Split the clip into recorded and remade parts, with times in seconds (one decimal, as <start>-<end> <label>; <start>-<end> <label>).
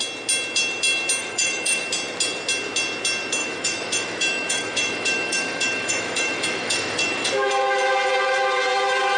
0.0-1.2 recorded; 1.2-1.8 remade; 1.8-3.4 recorded; 3.4-7.3 remade; 7.3-9.2 recorded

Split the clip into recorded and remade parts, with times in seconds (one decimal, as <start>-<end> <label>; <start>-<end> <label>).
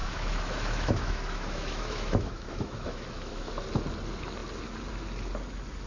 0.0-3.5 remade; 3.5-5.9 recorded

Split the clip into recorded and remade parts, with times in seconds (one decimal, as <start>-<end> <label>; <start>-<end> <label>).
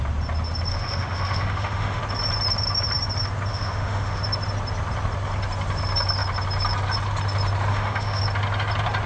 0.0-0.7 recorded; 0.7-2.0 remade; 2.0-3.5 recorded; 3.5-4.2 remade; 4.2-7.7 recorded; 7.7-8.2 remade; 8.2-9.1 recorded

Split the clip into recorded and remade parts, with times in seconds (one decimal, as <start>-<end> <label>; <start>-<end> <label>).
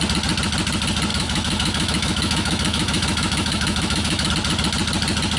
0.0-1.1 recorded; 1.1-4.3 remade; 4.3-5.4 recorded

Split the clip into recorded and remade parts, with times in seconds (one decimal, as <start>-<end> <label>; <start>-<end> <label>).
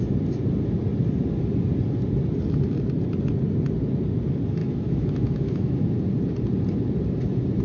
0.0-4.6 recorded; 4.6-6.0 remade; 6.0-7.6 recorded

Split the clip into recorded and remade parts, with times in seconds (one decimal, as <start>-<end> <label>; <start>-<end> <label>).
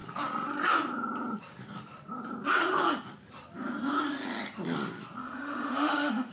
0.0-5.2 recorded; 5.2-6.3 remade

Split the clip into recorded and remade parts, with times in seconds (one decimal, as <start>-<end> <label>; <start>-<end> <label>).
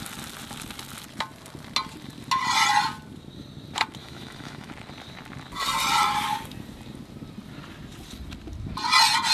0.0-4.0 recorded; 4.0-4.7 remade; 4.7-9.3 recorded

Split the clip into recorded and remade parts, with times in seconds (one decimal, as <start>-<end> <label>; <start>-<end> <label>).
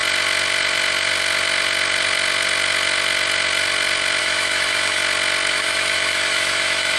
0.0-4.2 recorded; 4.2-5.0 remade; 5.0-5.5 recorded; 5.5-7.0 remade